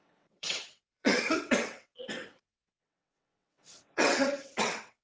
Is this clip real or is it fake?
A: fake